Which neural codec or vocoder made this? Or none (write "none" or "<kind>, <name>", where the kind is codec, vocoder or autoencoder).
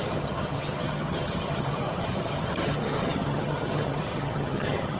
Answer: vocoder, HiFi-GAN